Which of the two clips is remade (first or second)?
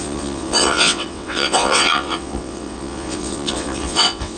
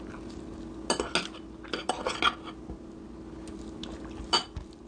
first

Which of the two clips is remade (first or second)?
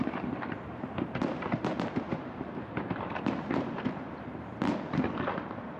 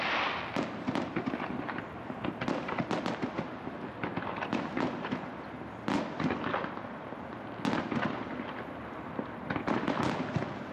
first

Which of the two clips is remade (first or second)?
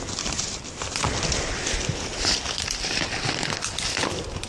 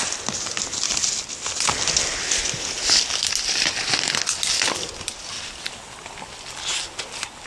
first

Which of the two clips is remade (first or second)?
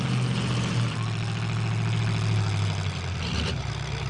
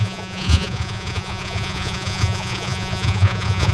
second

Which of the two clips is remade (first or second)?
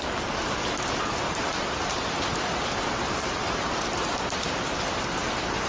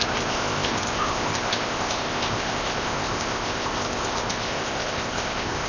second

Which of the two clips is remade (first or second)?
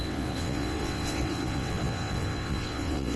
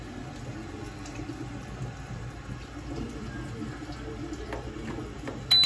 first